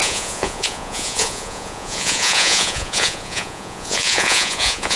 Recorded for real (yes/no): no